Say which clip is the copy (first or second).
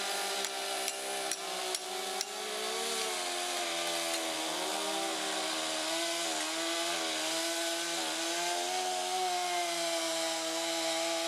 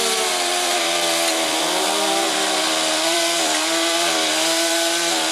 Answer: second